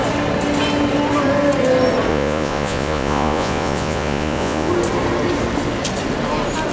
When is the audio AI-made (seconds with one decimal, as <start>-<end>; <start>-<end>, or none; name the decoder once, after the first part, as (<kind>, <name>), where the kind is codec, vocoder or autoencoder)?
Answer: 2.1-4.7 (vocoder, Vocos)